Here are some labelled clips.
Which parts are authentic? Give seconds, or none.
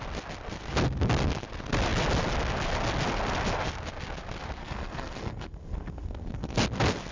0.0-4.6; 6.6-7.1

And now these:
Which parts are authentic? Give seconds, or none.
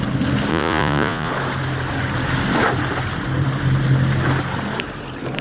0.0-0.5; 1.3-5.4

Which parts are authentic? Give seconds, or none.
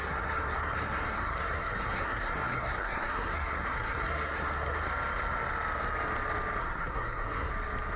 4.8-6.6; 7.5-8.0